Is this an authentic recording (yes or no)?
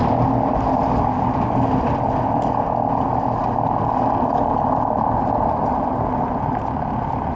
yes